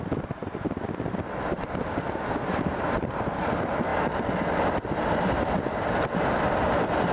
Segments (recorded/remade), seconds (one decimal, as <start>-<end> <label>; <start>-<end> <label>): 0.0-7.1 recorded